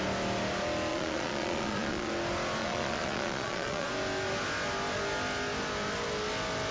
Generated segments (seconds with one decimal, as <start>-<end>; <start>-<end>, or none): 0.9-2.1; 2.6-3.9